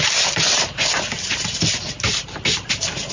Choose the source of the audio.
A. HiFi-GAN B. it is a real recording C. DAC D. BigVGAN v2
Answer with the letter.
B